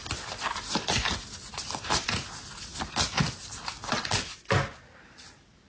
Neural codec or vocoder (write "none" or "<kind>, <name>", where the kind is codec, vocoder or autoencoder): none